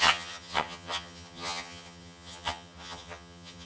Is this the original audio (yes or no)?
no